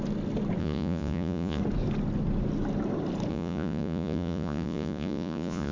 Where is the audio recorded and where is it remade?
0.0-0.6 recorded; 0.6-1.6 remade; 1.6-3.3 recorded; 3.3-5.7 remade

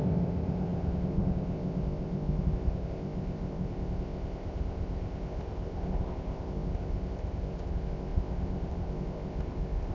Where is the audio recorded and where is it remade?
0.0-9.9 remade

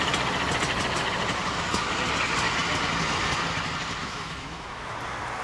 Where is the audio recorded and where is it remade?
0.0-4.0 recorded; 4.0-4.9 remade; 4.9-5.4 recorded

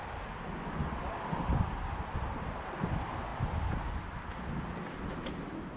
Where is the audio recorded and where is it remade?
0.0-5.8 recorded